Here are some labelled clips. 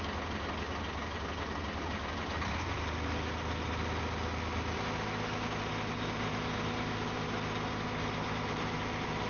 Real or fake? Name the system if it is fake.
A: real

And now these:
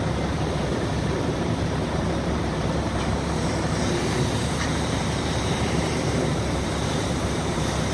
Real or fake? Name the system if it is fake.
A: fake, vocoder, BigVGAN v2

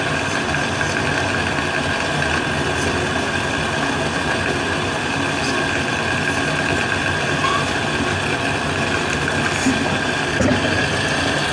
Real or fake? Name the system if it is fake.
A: real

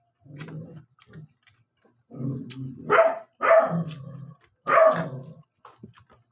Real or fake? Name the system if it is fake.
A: real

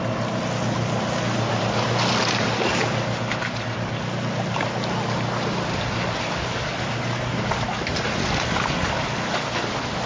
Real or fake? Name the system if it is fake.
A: real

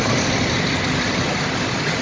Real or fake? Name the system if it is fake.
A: real